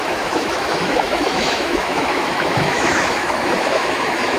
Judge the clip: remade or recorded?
remade